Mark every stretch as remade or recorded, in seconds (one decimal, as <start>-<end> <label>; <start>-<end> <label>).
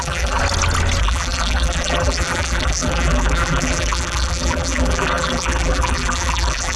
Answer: 0.0-0.4 remade; 0.4-1.0 recorded; 1.0-6.8 remade